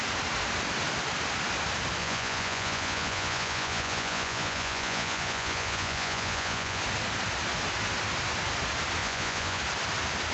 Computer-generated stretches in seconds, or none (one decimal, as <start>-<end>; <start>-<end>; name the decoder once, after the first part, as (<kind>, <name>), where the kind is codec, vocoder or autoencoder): 2.0-6.8 (vocoder, Vocos); 9.0-9.6